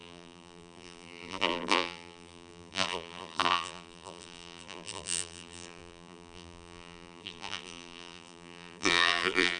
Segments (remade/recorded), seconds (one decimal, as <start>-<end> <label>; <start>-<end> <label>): 0.0-9.6 remade